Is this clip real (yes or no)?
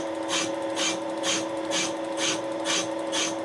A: yes